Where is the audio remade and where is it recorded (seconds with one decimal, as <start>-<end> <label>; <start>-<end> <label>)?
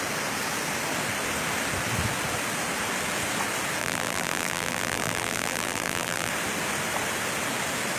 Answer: 0.0-3.8 recorded; 3.8-6.3 remade; 6.3-8.0 recorded